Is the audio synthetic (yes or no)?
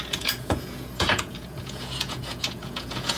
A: yes